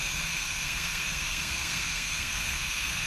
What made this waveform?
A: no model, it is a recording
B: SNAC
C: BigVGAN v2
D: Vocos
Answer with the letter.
B